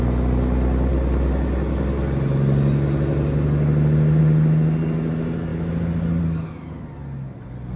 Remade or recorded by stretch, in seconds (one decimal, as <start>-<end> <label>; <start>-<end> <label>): 0.0-7.8 recorded